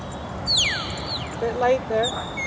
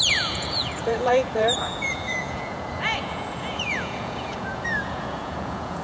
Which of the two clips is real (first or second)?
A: first